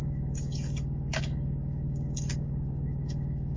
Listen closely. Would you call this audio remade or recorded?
remade